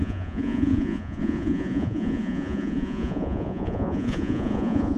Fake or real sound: fake